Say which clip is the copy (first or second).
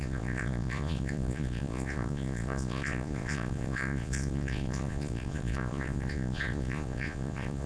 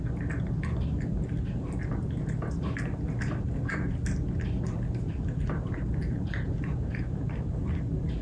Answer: first